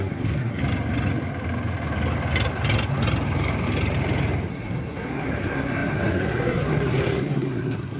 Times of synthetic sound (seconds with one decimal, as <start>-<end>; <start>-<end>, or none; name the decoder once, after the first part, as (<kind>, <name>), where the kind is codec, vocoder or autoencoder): 0.0-0.6 (codec, SNAC); 4.5-8.0